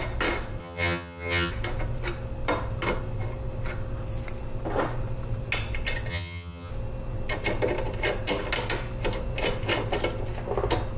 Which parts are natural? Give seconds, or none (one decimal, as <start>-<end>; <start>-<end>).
0.0-0.6; 1.5-6.1; 6.7-11.0

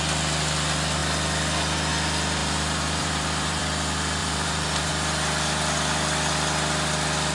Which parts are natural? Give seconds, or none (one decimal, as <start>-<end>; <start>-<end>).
0.0-2.4; 3.6-4.2; 4.9-7.3

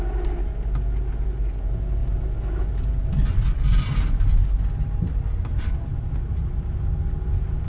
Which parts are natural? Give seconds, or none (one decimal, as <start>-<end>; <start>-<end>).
0.0-7.7